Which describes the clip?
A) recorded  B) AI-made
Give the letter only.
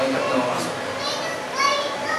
A